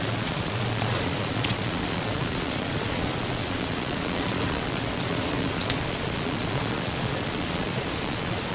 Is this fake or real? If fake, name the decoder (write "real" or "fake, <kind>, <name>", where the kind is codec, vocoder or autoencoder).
fake, vocoder, Vocos